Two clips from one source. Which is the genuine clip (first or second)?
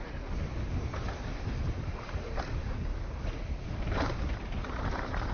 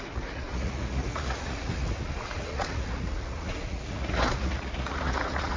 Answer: first